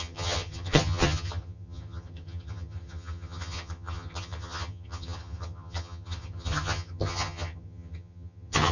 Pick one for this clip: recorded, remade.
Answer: remade